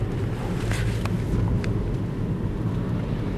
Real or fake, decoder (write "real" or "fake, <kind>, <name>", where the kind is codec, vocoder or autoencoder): real